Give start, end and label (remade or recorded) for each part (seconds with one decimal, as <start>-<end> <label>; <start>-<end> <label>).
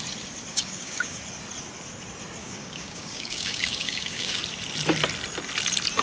0.0-0.5 recorded; 0.5-1.2 remade; 1.2-2.4 recorded; 2.4-4.4 remade; 4.4-6.0 recorded